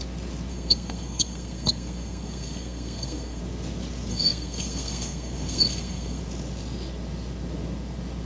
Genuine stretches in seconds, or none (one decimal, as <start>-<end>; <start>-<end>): 0.0-0.5; 3.4-4.1; 6.2-8.2